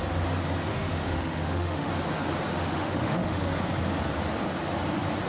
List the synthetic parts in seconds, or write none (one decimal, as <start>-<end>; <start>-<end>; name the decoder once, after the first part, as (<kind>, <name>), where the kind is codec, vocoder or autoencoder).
0.7-1.9 (autoencoder, DAC-VAE); 2.5-3.5